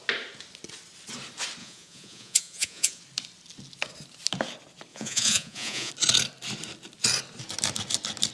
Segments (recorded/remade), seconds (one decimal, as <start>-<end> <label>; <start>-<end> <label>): 0.0-1.6 recorded; 1.6-3.0 remade; 3.0-4.9 recorded; 4.9-5.9 remade; 5.9-8.3 recorded